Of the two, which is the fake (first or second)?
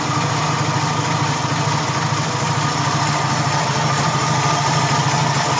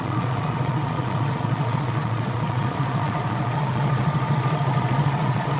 second